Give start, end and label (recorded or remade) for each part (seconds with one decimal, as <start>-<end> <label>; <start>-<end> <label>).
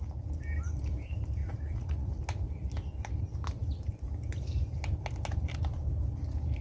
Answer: 0.0-1.4 recorded; 1.4-2.1 remade; 2.1-6.6 recorded